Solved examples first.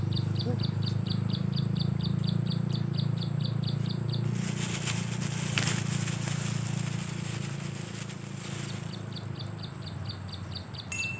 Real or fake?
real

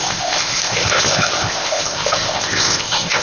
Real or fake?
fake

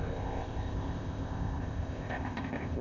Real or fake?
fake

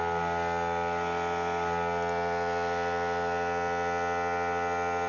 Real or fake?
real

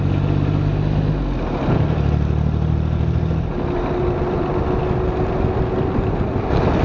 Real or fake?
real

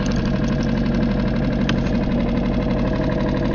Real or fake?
real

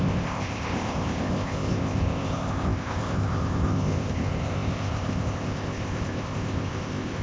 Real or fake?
fake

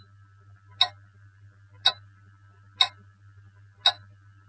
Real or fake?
real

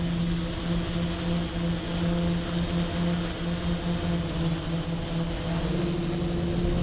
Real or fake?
real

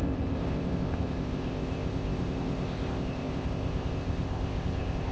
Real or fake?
fake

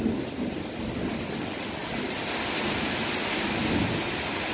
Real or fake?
real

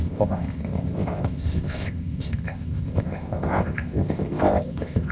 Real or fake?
fake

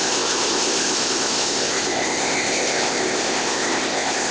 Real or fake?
fake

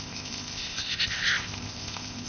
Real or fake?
fake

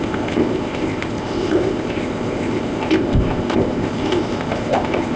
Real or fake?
fake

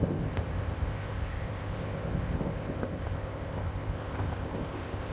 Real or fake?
fake